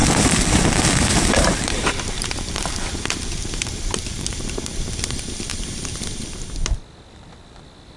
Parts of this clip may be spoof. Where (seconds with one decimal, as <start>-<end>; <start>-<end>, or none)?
0.0-4.5